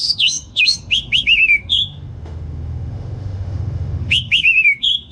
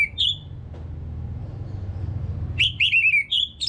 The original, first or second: second